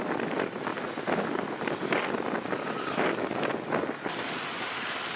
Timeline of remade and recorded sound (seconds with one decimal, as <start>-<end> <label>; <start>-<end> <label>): 0.0-5.2 recorded